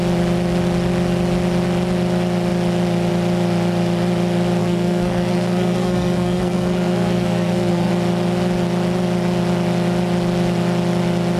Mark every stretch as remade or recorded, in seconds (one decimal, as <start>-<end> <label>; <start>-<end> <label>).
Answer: 0.0-4.6 recorded; 4.6-7.9 remade; 7.9-11.4 recorded